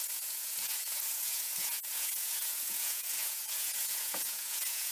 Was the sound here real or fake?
fake